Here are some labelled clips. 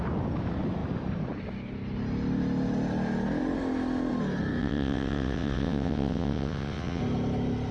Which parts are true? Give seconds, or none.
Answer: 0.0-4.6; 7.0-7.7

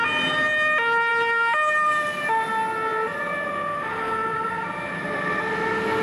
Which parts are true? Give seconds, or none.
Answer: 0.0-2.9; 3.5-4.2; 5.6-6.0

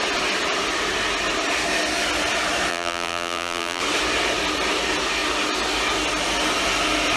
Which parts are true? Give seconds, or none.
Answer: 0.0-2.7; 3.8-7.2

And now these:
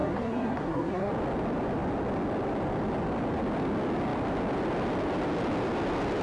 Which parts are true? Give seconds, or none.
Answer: 1.1-6.2